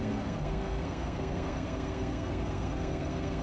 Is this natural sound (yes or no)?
no